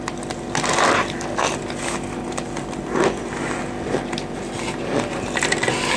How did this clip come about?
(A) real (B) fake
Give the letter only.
A